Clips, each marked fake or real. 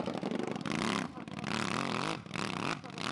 real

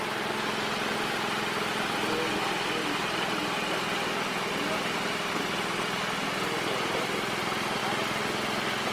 real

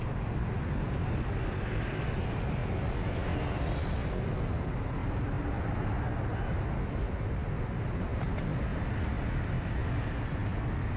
real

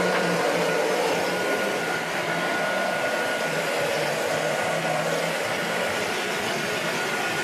real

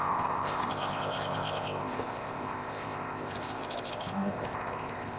fake